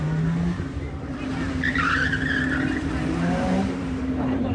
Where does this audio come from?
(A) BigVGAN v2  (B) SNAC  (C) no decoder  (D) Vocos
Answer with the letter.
A